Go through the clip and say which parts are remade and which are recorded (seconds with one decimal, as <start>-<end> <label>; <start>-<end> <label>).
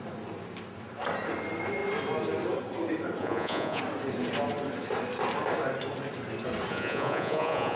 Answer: 0.0-3.2 recorded; 3.2-3.8 remade; 3.8-6.7 recorded; 6.7-7.8 remade